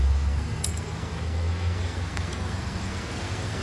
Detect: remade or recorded remade